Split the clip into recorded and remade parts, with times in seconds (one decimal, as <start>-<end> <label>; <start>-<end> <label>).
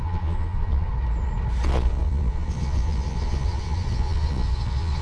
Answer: 0.0-0.9 remade; 0.9-1.6 recorded; 1.6-5.0 remade